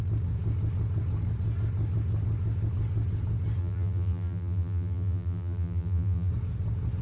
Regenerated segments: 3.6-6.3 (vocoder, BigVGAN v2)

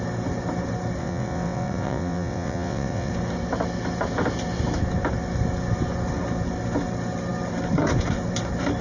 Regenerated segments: 1.0-3.1 (vocoder, WaveNeXt)

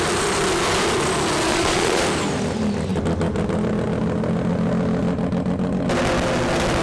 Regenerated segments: 1.5-2.0 (vocoder, Vocos)

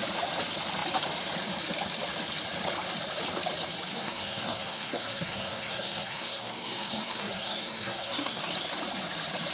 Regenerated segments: 3.9-8.4 (codec, SNAC)

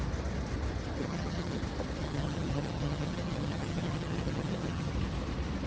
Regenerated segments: 1.0-1.6 (vocoder, HiFi-GAN); 2.0-4.9